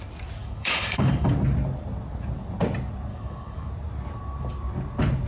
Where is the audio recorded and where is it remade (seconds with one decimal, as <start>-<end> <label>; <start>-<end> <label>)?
0.0-0.4 recorded; 0.4-1.3 remade; 1.3-3.1 recorded; 3.1-3.7 remade; 3.7-5.3 recorded

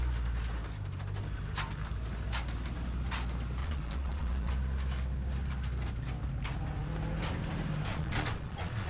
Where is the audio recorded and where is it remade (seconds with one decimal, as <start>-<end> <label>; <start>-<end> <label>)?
0.0-3.6 recorded; 3.6-4.5 remade; 4.5-7.9 recorded; 7.9-8.9 remade

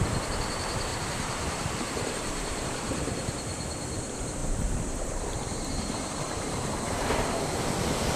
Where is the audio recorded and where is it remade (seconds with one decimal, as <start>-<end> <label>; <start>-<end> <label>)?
0.0-8.2 remade

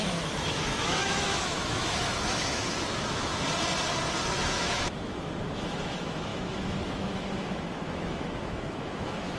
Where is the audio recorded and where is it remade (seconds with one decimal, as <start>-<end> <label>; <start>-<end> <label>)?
0.0-3.3 remade; 3.3-4.3 recorded; 4.3-9.4 remade